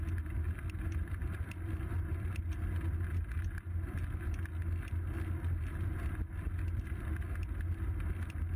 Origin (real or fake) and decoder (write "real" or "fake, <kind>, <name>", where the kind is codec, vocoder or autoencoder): real